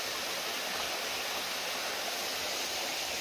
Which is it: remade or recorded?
recorded